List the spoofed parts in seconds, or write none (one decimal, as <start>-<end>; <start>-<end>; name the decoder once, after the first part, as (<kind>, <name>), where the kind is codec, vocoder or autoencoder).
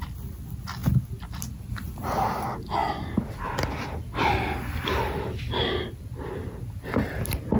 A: none